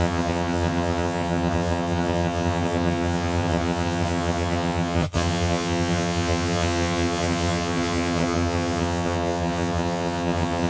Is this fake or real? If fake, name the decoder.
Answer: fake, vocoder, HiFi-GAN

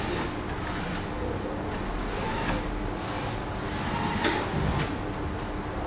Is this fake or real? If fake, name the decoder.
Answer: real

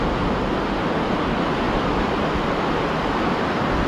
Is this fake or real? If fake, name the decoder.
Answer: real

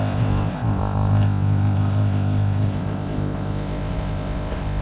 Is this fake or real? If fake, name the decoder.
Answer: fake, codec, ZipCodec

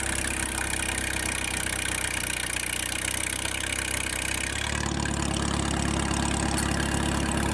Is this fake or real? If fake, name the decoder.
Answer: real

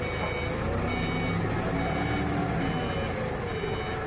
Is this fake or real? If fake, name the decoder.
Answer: real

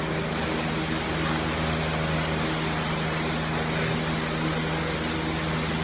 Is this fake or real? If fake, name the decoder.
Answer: real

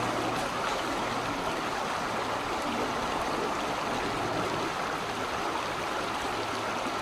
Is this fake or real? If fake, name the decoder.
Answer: real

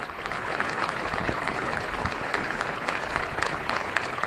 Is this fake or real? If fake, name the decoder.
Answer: fake, codec, HILCodec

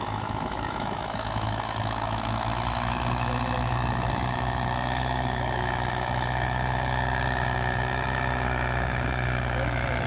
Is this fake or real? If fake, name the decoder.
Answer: fake, autoencoder, DAC-VAE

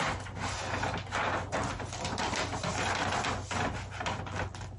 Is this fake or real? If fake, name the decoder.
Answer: real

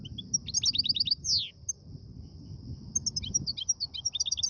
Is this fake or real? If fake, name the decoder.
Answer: real